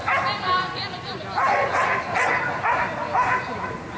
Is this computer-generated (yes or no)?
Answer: no